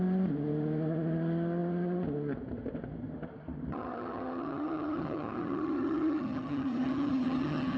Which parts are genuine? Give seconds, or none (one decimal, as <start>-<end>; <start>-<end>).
0.0-3.7